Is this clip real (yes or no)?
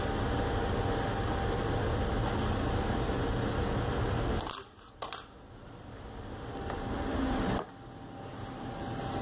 yes